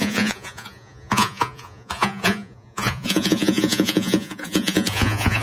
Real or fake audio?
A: fake